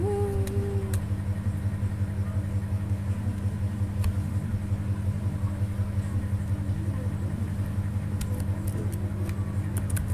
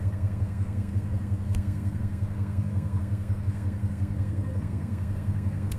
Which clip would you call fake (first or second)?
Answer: second